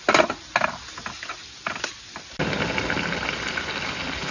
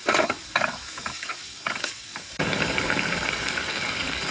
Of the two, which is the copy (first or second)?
second